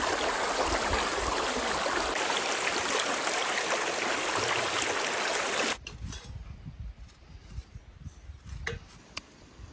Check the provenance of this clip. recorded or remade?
recorded